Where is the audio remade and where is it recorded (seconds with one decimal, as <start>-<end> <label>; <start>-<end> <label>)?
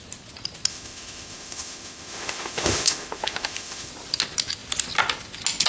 0.0-0.7 recorded; 0.7-3.9 remade; 3.9-5.7 recorded